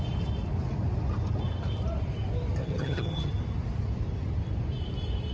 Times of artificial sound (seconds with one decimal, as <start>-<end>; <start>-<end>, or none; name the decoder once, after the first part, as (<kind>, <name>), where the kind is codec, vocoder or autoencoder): 2.6-3.3 (vocoder, HiFi-GAN)